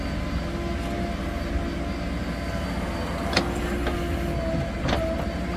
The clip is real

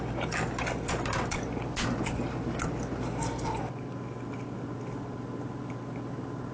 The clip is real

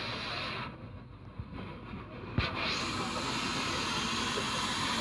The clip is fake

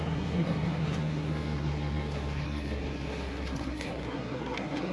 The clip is fake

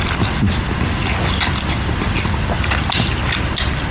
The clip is real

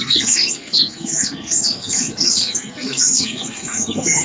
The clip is fake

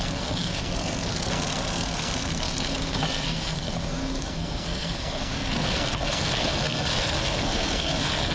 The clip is fake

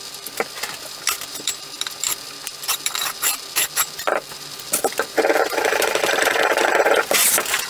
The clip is fake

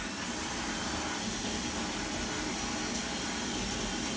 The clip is real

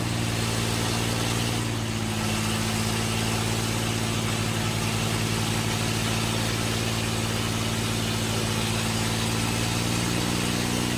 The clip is real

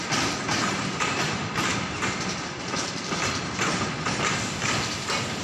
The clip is fake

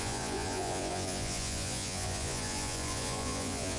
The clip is fake